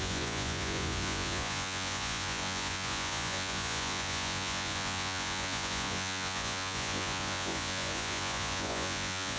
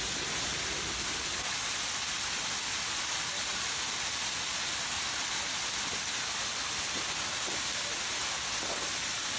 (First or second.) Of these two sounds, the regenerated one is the first